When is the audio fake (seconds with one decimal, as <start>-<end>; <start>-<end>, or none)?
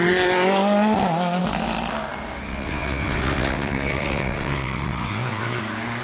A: 2.5-5.6